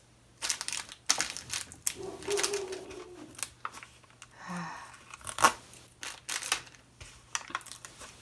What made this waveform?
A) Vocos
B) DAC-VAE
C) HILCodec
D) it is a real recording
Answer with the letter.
D